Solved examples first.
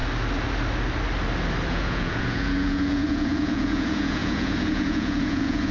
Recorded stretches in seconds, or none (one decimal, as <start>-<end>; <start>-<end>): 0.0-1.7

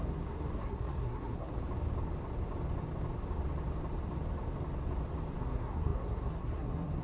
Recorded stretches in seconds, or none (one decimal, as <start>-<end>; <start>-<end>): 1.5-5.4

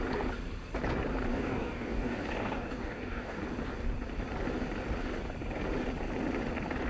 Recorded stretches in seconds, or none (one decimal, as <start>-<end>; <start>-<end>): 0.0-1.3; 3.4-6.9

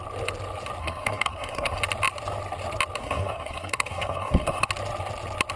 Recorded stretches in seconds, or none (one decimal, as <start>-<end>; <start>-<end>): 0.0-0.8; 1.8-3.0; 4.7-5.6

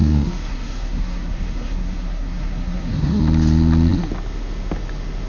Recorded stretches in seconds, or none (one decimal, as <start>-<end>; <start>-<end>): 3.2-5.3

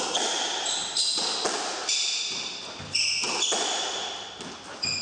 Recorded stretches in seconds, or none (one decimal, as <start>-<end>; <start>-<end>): 0.0-5.0

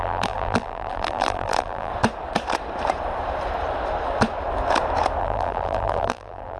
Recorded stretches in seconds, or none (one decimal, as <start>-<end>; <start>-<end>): 1.9-5.2